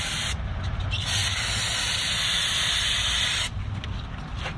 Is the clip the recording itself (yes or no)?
yes